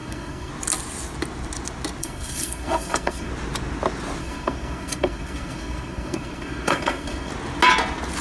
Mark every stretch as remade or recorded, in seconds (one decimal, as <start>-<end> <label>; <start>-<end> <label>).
0.0-0.5 remade; 0.5-2.0 recorded; 2.0-3.3 remade; 3.3-4.2 recorded; 4.2-7.3 remade; 7.3-8.2 recorded